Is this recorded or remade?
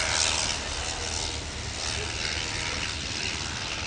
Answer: recorded